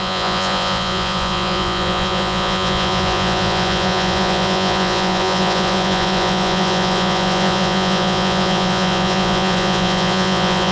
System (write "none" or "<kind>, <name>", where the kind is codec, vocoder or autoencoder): vocoder, Vocos